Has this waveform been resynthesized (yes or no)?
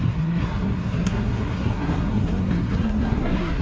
yes